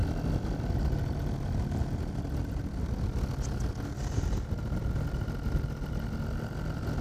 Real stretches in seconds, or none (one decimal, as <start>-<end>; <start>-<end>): 0.0-7.0

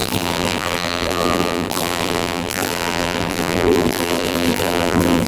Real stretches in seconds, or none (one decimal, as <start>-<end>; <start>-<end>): none

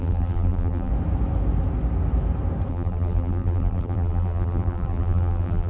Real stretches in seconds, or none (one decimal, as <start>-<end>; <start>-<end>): 0.9-2.7

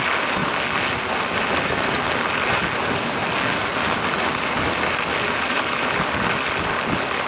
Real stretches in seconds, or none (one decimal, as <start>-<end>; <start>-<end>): 0.4-1.1; 3.2-5.4

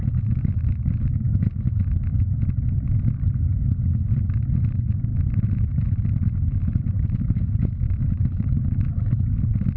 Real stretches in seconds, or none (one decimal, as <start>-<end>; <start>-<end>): 0.0-5.1; 6.3-6.7; 8.2-9.8